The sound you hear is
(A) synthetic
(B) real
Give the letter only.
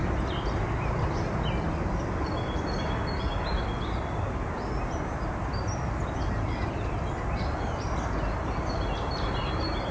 B